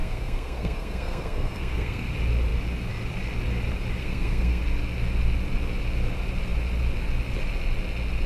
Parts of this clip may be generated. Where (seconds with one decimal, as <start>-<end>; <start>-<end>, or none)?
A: 0.0-2.1; 4.0-4.6